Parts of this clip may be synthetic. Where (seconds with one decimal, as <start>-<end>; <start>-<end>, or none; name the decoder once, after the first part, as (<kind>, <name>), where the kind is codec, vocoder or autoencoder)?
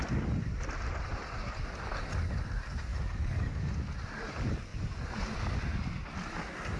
2.9-3.7 (codec, DAC)